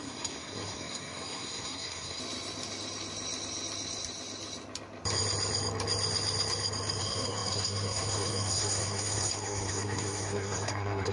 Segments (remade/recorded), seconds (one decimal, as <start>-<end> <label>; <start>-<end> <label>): 0.0-2.2 remade; 2.2-7.0 recorded; 7.0-11.1 remade